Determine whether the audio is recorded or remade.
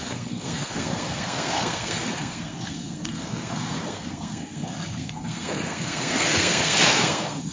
remade